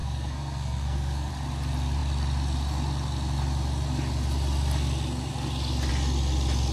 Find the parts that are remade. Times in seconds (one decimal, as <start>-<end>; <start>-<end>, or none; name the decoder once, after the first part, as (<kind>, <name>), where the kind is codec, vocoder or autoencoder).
0.0-1.3 (codec, SNAC)